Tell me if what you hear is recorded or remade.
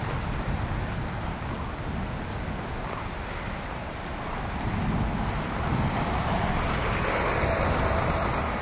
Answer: recorded